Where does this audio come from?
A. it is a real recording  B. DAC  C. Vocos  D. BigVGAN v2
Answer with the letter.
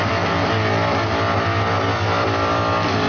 A